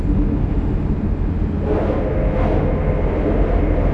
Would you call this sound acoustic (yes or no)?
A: yes